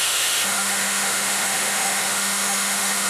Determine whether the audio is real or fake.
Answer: fake